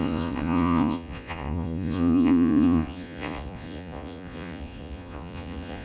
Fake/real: fake